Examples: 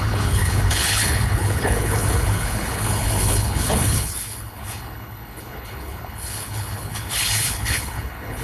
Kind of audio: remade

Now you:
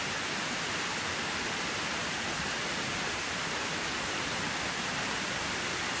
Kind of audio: recorded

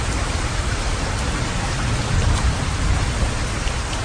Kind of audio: recorded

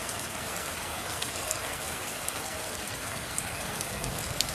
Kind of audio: remade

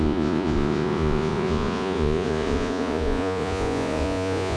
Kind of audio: remade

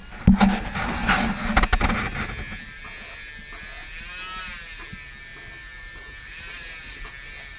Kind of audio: recorded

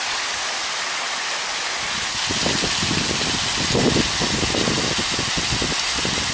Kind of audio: recorded